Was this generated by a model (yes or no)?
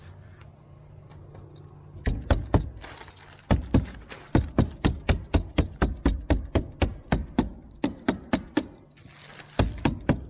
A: no